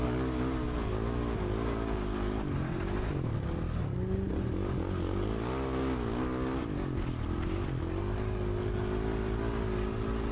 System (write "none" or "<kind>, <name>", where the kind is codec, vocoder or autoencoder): none